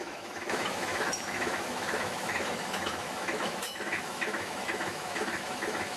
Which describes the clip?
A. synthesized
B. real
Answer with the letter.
A